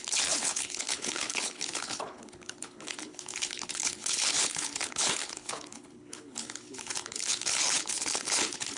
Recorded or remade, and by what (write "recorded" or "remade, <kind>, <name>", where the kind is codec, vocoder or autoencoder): remade, codec, HILCodec